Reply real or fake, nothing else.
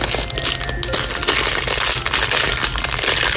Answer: real